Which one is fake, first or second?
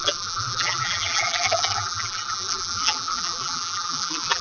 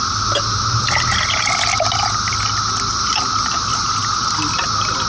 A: first